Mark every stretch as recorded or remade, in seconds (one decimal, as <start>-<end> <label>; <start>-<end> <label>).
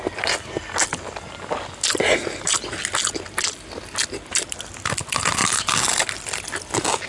0.0-7.1 recorded